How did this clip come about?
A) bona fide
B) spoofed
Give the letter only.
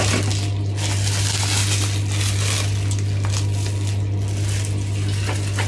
A